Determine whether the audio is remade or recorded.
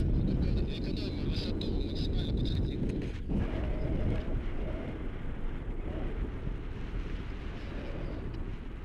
recorded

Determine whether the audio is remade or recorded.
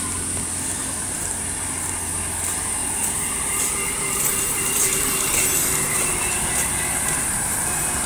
recorded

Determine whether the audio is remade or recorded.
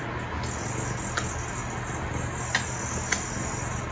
recorded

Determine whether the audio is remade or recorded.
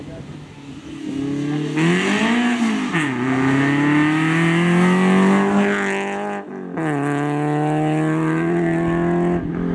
recorded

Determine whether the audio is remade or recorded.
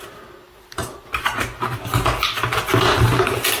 recorded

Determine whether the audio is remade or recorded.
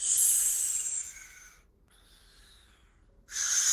recorded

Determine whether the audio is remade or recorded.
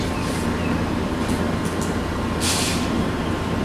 recorded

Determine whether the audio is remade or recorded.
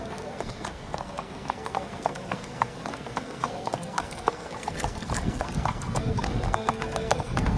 remade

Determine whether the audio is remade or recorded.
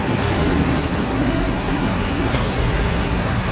remade